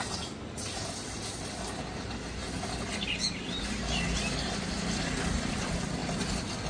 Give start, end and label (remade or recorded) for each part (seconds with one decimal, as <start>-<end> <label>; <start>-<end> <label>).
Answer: 0.0-6.7 recorded